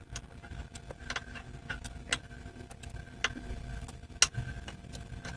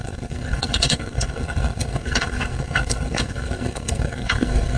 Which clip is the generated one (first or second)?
second